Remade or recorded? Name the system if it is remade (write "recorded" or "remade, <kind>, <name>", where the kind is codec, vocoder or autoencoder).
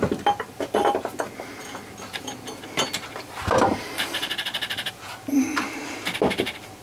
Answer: recorded